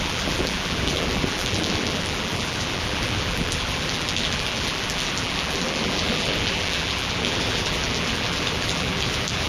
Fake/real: fake